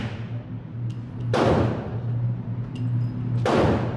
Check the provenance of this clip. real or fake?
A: real